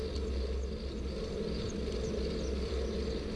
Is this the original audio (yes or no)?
yes